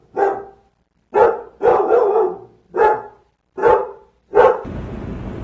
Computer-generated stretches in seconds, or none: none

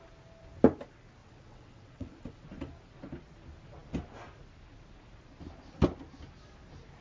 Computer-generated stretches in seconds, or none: 1.2-2.4

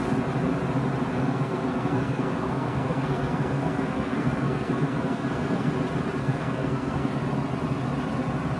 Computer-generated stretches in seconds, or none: 1.1-5.7; 6.2-7.1

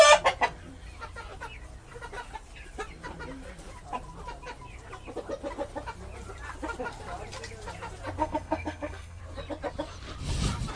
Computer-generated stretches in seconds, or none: 8.2-9.2